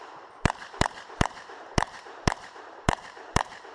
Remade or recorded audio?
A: remade